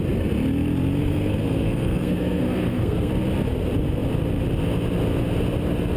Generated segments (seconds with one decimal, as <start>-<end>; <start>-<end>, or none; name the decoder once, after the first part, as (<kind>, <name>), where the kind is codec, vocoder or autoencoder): 1.0-3.1 (codec, SNAC)